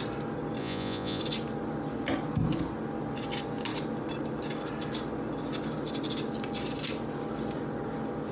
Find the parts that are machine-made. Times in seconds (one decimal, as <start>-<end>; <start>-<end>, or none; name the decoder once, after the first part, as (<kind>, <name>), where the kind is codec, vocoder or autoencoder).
0.6-1.2 (vocoder, Vocos)